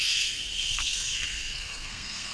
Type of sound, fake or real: fake